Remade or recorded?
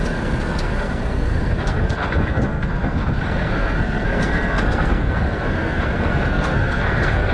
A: remade